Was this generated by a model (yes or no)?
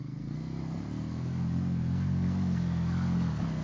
yes